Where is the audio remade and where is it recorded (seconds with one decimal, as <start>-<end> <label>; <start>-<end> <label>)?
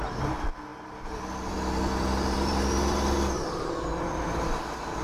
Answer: 0.0-0.7 recorded; 0.7-3.7 remade; 3.7-5.0 recorded